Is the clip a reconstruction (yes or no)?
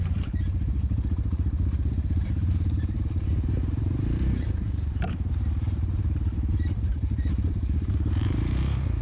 yes